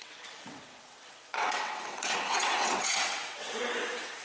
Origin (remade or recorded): remade